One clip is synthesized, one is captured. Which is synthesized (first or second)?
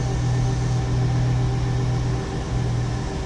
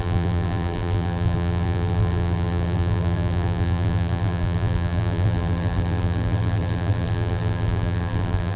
second